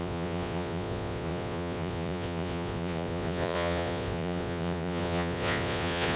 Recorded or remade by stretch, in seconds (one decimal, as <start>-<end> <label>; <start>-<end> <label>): 0.0-6.2 remade